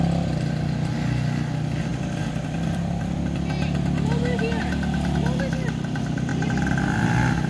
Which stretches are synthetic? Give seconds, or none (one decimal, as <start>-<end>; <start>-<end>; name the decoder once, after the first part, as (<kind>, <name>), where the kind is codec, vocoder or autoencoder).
1.9-4.6 (vocoder, BigVGAN v2); 6.3-7.5